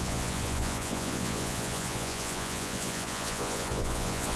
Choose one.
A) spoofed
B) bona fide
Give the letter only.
A